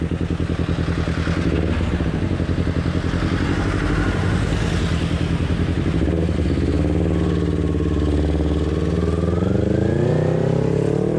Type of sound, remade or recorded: recorded